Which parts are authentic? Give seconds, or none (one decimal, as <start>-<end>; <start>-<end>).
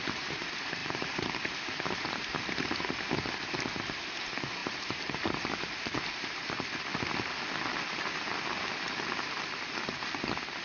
0.0-0.8; 1.5-4.6; 6.0-10.6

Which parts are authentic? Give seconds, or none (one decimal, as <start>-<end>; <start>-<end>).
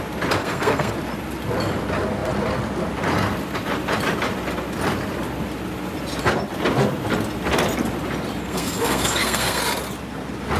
0.0-0.4; 0.9-8.4; 9.6-10.6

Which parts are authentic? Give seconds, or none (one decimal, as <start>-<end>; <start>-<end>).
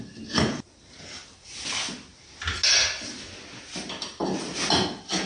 0.0-5.3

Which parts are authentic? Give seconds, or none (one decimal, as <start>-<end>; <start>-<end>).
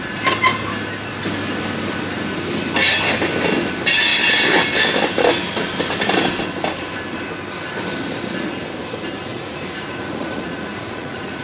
0.0-9.3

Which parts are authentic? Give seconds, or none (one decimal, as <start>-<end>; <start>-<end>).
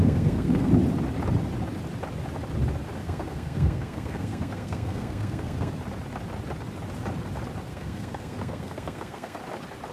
0.7-3.0; 5.7-7.7; 9.4-9.9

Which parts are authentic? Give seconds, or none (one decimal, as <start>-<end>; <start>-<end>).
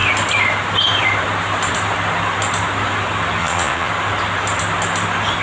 0.0-3.4; 3.9-5.4